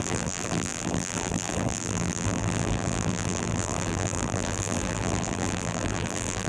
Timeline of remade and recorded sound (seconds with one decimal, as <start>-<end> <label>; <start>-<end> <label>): 0.0-6.5 remade